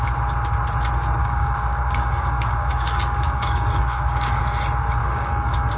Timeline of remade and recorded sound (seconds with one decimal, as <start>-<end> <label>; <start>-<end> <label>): 0.0-1.2 recorded; 1.2-4.4 remade; 4.4-5.0 recorded; 5.0-5.8 remade